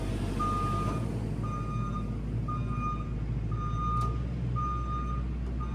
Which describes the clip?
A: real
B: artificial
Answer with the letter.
A